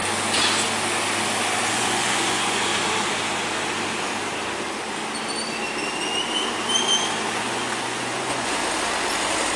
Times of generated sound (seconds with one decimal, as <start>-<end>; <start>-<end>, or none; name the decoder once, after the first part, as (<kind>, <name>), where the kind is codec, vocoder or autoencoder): 1.7-2.7 (vocoder, Vocos); 7.3-8.6